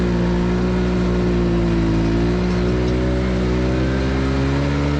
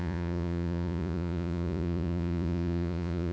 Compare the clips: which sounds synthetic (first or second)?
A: second